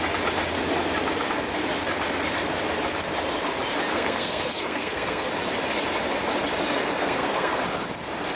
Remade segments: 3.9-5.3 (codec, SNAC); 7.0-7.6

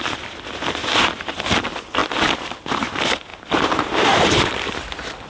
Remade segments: 0.8-1.3 (vocoder, BigVGAN v2)

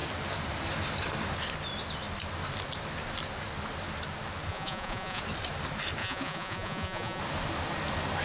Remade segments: 4.5-5.2 (vocoder, Vocos); 6.0-7.2